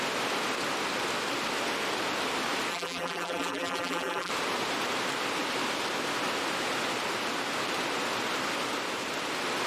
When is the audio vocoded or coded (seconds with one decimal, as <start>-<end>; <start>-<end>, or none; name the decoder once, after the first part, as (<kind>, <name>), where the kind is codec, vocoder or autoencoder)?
2.7-4.3 (vocoder, BigVGAN v2)